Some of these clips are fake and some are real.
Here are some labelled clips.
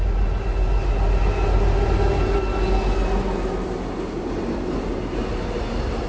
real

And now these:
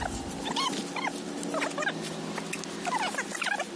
real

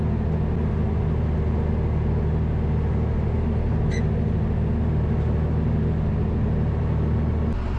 real